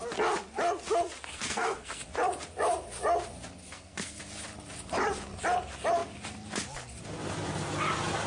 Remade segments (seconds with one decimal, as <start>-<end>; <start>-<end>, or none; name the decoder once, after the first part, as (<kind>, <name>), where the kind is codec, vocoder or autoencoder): 1.3-2.0 (codec, SNAC); 3.6-4.2